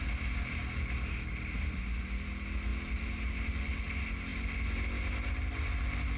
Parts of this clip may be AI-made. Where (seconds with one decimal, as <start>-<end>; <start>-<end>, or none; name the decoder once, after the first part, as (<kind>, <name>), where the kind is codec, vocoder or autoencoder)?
2.7-3.8 (vocoder, BigVGAN v2)